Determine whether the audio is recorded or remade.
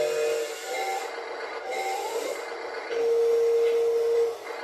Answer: recorded